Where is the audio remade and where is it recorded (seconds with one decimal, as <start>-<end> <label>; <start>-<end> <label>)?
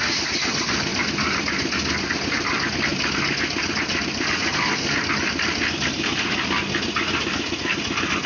0.0-2.9 recorded; 2.9-6.6 remade; 6.6-8.3 recorded